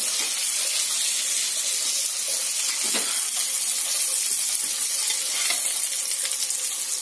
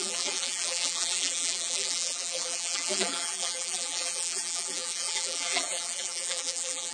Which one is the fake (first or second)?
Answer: second